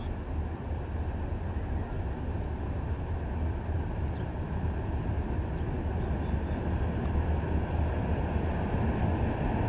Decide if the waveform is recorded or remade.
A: recorded